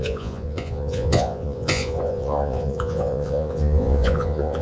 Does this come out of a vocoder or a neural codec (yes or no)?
yes